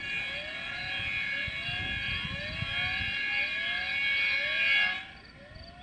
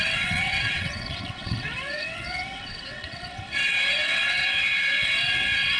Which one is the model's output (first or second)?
second